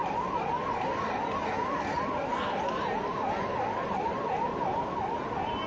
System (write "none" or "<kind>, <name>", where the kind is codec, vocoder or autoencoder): none